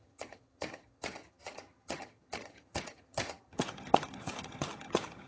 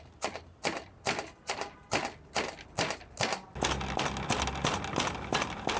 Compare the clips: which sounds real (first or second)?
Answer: second